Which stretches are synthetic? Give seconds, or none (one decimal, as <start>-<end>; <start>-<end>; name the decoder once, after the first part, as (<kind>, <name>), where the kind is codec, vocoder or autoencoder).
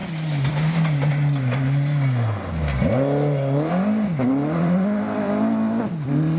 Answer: none